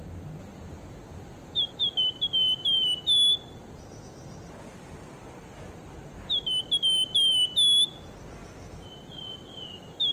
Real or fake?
real